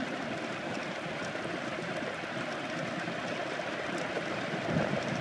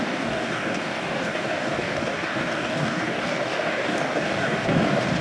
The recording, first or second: first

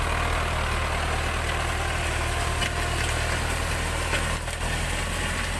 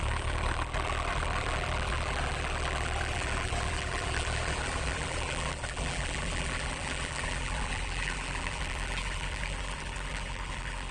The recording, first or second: first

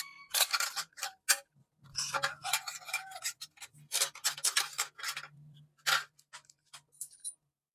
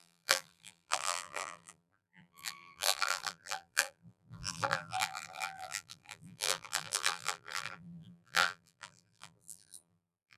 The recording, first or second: first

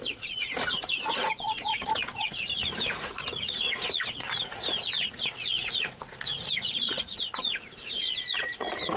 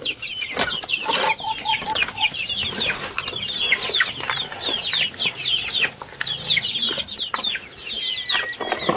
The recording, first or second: second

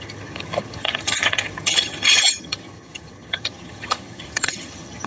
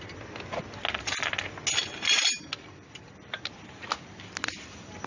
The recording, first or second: second